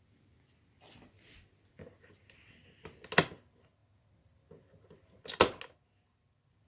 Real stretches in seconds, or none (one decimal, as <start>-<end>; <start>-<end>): 0.0-6.7